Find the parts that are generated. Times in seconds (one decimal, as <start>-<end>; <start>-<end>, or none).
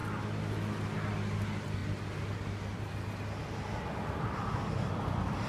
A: none